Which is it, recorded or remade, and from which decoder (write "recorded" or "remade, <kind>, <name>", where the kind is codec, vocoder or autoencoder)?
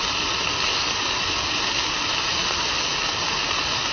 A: recorded